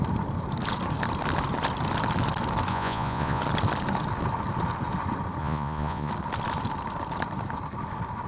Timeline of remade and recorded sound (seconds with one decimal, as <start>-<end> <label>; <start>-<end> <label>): 0.0-2.7 recorded; 2.7-3.4 remade; 3.4-5.4 recorded; 5.4-6.1 remade; 6.1-8.3 recorded